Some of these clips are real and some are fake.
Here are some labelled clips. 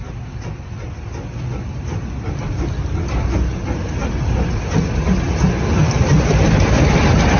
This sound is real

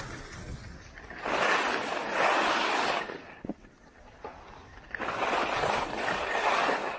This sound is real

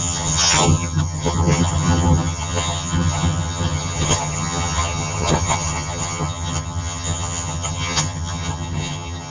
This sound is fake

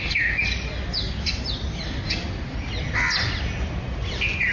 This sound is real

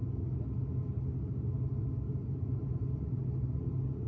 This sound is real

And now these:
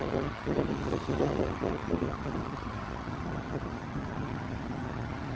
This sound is fake